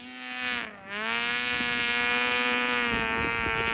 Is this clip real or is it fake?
real